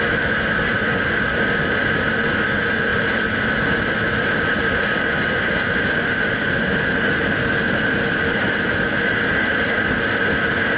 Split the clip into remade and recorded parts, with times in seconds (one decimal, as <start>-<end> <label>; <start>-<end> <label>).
0.0-10.8 recorded